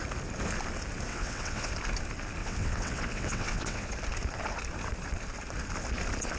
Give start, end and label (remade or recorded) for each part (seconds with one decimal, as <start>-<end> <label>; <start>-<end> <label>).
0.0-1.1 recorded; 1.1-1.7 remade; 1.7-2.4 recorded; 2.4-3.9 remade; 3.9-6.4 recorded